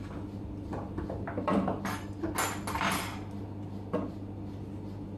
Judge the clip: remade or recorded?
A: recorded